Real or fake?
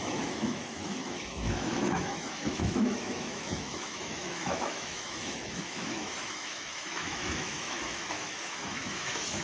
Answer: fake